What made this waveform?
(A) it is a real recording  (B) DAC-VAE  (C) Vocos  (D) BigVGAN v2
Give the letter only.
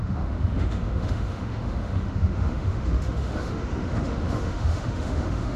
B